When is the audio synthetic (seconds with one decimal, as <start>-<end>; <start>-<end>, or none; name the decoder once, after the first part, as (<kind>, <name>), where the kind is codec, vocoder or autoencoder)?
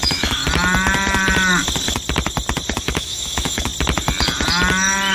0.0-0.4 (autoencoder, DAC-VAE); 2.8-3.7